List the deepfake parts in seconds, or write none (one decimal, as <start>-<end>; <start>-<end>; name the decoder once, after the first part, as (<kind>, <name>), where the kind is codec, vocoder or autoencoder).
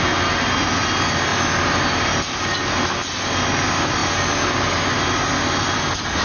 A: none